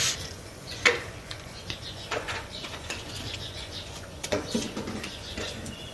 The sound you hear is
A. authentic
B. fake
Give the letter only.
B